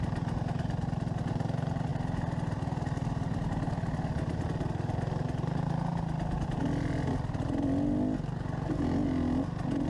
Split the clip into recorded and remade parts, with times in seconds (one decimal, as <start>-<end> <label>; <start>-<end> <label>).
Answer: 0.0-9.9 recorded